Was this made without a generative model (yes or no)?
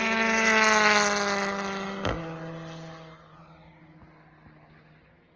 yes